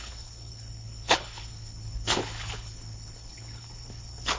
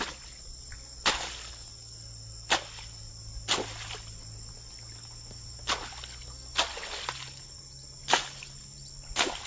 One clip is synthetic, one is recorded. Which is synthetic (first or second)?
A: first